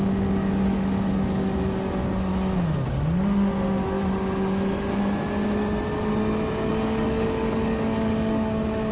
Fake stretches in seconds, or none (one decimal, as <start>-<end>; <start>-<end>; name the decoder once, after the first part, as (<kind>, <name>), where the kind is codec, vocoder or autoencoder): 0.0-2.3 (codec, DAC); 6.7-8.9